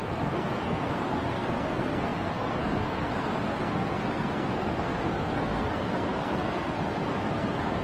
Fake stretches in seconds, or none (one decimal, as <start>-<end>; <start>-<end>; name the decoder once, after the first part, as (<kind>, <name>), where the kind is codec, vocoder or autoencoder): 0.0-7.8 (codec, SNAC)